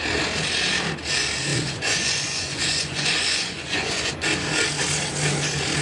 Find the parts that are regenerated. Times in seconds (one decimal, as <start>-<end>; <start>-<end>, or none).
1.5-4.1